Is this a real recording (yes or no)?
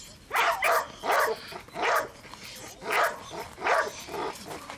yes